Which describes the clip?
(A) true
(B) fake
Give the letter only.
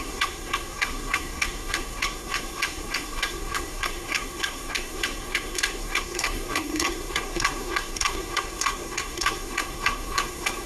B